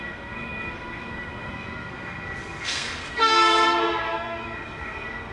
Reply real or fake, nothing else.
fake